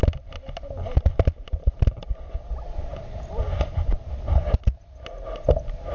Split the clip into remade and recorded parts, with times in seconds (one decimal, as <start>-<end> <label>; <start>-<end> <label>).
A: 0.0-5.9 recorded